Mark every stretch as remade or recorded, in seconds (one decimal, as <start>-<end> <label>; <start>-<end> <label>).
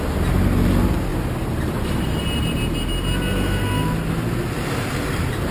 0.0-1.1 recorded; 1.1-2.6 remade; 2.6-5.5 recorded